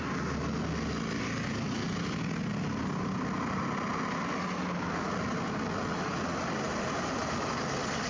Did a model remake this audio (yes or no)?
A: no